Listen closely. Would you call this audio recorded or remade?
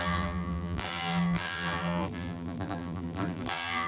remade